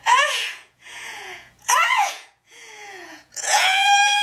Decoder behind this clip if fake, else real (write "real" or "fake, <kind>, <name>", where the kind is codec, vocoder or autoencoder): fake, vocoder, Vocos